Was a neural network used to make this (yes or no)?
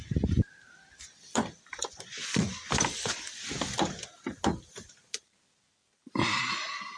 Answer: no